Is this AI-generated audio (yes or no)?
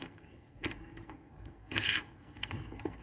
yes